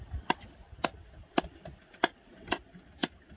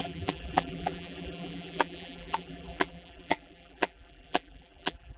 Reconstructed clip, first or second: second